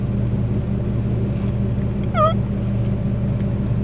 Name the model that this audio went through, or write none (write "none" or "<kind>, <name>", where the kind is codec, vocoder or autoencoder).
none